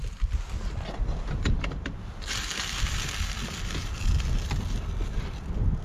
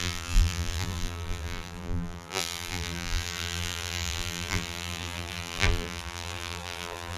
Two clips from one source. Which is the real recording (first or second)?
first